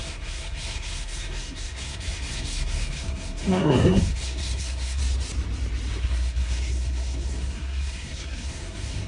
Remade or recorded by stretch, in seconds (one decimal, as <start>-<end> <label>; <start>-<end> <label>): 0.0-5.0 remade; 5.0-6.0 recorded; 6.0-9.1 remade